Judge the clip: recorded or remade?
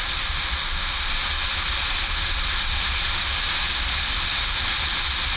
recorded